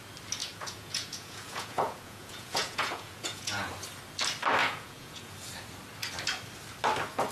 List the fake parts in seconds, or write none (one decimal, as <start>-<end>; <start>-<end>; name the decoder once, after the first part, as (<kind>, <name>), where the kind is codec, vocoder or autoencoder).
0.4-3.7 (vocoder, Vocos); 4.6-5.3